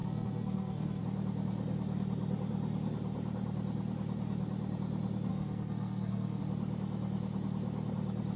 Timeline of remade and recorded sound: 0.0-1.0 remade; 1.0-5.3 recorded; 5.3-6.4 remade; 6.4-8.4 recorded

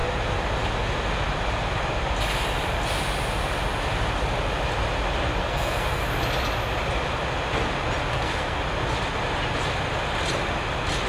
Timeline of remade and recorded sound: 0.0-5.4 recorded; 5.4-6.0 remade; 6.0-8.1 recorded; 8.1-8.6 remade; 8.6-11.1 recorded

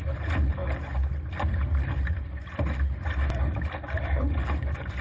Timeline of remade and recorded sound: 0.0-5.0 recorded

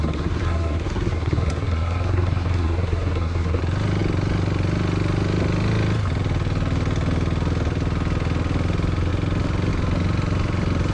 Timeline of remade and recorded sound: 0.0-3.6 remade; 3.6-10.9 recorded

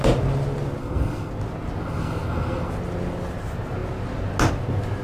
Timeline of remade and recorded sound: 0.0-0.8 recorded; 0.8-1.3 remade; 1.3-1.8 recorded; 1.8-2.7 remade; 2.7-5.0 recorded